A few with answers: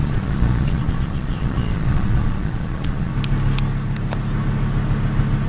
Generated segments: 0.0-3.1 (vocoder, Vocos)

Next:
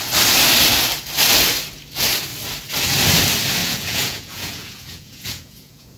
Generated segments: 3.6-6.0 (vocoder, Vocos)

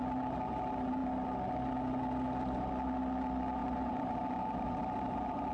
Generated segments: 3.6-4.1 (vocoder, BigVGAN v2)

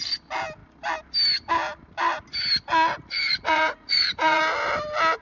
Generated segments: 3.2-4.4 (vocoder, Vocos)